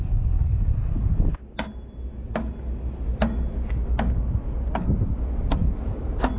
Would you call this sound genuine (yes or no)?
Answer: yes